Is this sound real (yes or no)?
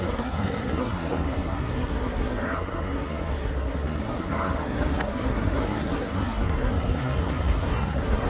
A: no